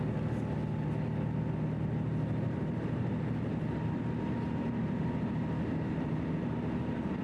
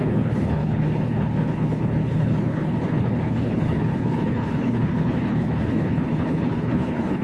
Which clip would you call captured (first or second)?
first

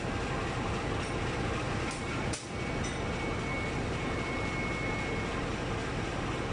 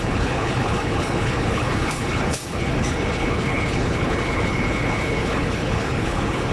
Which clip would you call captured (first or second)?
first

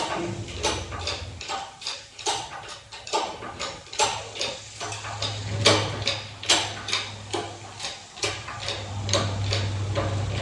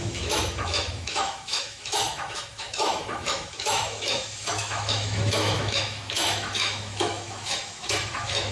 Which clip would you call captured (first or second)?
first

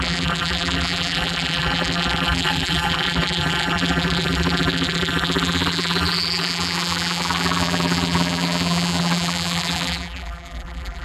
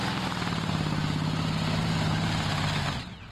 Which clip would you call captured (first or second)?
second